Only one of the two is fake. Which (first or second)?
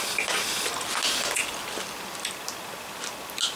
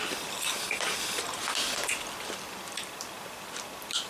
second